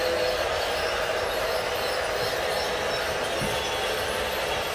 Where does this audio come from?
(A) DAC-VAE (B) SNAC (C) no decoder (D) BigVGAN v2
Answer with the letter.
C